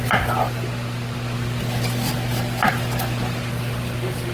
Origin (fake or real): real